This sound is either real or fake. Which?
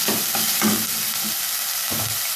real